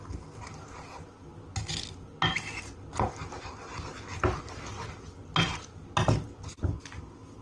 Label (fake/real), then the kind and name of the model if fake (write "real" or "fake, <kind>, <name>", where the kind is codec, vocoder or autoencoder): real